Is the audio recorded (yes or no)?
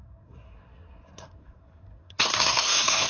no